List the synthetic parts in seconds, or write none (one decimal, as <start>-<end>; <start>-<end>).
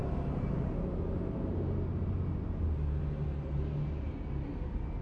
none